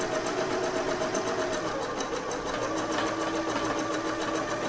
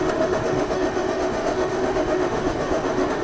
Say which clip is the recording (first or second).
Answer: first